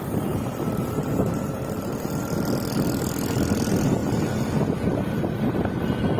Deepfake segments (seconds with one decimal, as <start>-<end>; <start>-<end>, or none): none